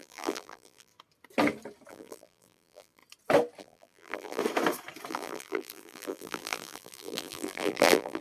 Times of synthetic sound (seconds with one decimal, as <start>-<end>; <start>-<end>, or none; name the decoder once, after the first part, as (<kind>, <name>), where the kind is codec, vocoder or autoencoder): 0.0-0.9 (vocoder, BigVGAN v2); 1.9-3.0; 3.6-4.4; 5.1-8.2